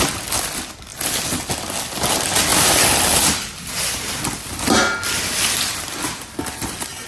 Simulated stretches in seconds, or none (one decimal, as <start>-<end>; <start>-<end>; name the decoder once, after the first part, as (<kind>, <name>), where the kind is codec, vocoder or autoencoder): none